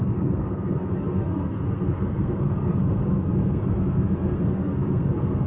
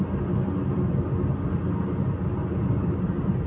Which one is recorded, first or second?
second